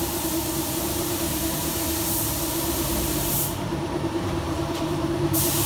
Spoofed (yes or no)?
yes